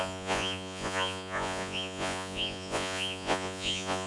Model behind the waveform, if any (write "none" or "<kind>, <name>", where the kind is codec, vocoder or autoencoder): vocoder, Vocos